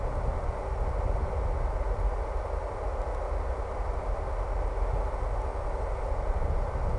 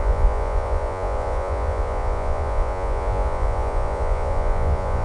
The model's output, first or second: second